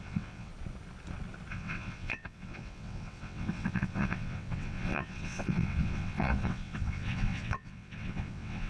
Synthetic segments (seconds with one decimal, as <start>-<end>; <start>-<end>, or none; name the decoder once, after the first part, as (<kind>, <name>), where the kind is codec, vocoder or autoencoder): 0.0-0.5 (vocoder, WaveNeXt); 1.5-8.7